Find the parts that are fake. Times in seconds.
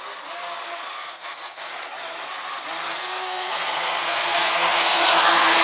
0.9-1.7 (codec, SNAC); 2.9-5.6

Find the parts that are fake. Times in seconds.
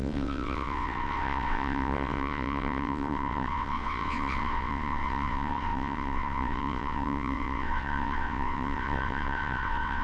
0.0-10.0 (vocoder, WaveNeXt)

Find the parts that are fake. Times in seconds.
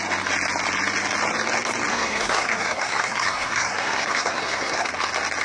1.9-4.9 (codec, SNAC)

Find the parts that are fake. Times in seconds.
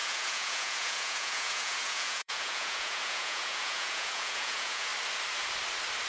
0.0-4.9 (vocoder, Vocos)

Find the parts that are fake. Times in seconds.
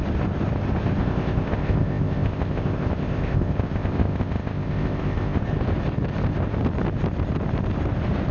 1.0-5.4 (codec, ZipCodec)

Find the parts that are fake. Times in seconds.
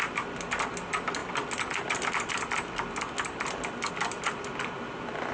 none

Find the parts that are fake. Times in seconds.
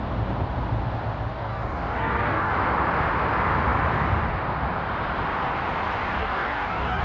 1.3-2.5 (codec, DAC); 6.2-7.0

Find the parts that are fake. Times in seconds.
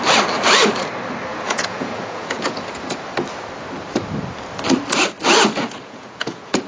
1.3-2.9 (vocoder, Vocos); 5.5-6.7